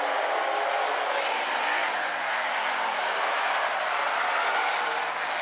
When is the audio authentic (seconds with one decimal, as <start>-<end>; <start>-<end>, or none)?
0.0-1.8; 5.0-5.4